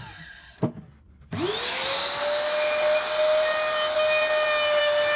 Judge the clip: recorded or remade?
recorded